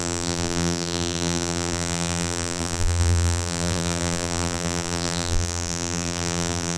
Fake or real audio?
fake